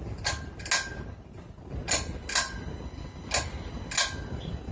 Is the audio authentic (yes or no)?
yes